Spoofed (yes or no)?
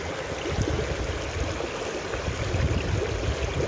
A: no